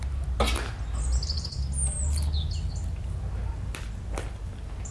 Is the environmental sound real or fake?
real